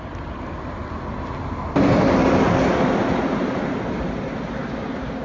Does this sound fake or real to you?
real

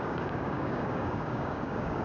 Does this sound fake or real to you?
fake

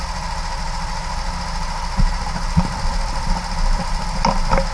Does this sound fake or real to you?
real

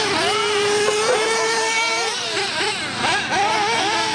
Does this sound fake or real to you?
real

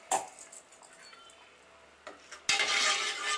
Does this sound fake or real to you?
real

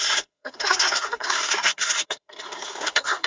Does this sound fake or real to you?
fake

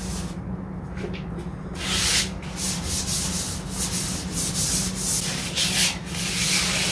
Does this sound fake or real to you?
real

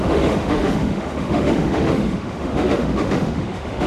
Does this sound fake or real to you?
fake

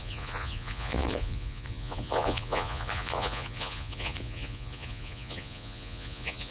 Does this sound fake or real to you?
fake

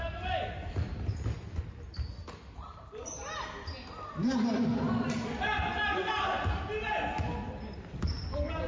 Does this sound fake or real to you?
real